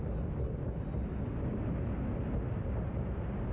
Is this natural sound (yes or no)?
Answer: yes